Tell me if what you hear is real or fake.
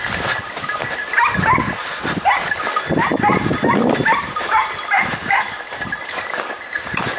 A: real